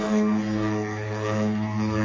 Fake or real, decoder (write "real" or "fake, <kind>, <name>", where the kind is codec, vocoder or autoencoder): fake, codec, SNAC